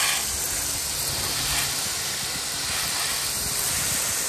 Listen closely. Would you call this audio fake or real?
real